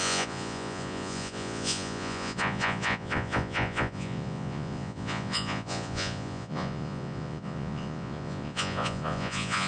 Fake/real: fake